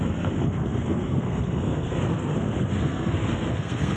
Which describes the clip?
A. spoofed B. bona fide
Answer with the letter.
A